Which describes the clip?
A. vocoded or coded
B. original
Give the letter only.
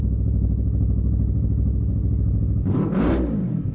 A